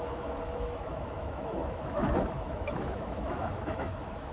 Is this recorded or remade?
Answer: remade